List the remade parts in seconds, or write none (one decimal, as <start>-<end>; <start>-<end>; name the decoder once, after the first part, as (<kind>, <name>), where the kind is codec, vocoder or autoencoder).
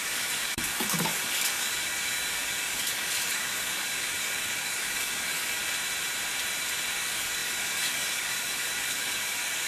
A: 0.0-5.6 (codec, DAC); 6.9-9.7